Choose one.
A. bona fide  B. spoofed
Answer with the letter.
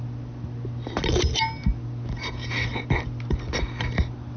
A